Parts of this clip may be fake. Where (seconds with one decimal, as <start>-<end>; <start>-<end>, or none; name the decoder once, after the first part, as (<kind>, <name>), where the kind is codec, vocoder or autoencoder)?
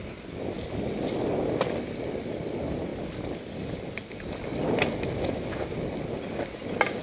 none